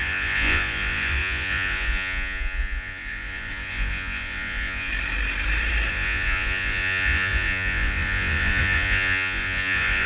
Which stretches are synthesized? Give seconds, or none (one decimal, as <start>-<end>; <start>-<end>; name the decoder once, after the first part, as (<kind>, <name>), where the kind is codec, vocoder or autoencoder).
0.0-4.9 (vocoder, Vocos); 5.9-10.1